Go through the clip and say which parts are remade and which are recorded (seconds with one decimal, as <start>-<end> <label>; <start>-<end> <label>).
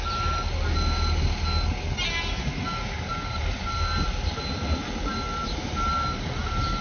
0.0-6.8 recorded